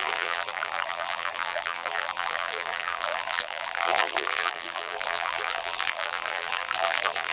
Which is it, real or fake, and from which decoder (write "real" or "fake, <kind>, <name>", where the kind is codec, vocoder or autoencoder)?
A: fake, vocoder, BigVGAN v2